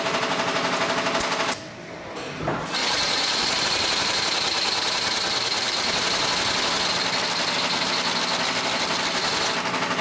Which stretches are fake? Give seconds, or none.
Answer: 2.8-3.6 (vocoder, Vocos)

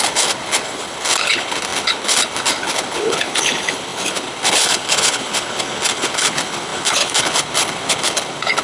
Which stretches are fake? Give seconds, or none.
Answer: 0.0-8.6 (codec, HILCodec)

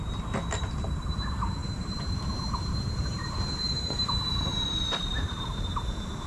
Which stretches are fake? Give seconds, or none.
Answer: 1.6-4.3 (vocoder, BigVGAN v2)

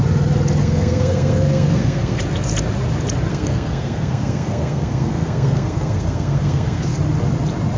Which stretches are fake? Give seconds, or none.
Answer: 0.6-2.2 (codec, SNAC); 3.3-6.9

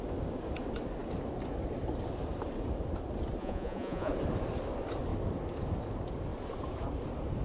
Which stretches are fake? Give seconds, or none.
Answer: 3.4-4.1 (vocoder, Vocos)

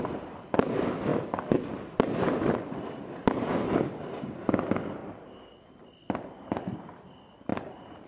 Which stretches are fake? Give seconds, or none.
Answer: 5.0-5.8 (vocoder, BigVGAN v2); 7.5-8.1